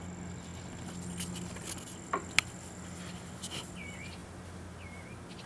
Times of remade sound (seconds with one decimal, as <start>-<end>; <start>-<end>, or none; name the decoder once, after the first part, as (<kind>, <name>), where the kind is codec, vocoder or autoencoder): none